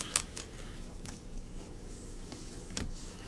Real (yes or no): no